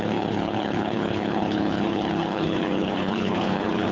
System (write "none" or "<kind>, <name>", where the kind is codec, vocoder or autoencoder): codec, HILCodec